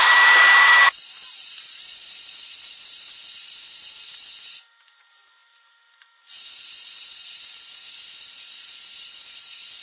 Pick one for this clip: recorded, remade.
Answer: remade